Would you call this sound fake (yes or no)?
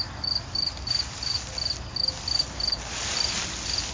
no